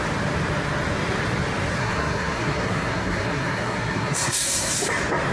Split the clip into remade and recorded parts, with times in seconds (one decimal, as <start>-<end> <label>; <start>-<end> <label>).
0.0-1.8 recorded; 1.8-4.7 remade; 4.7-5.3 recorded